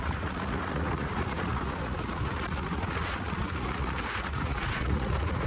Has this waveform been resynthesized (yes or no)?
yes